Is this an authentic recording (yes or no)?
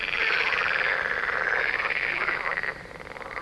yes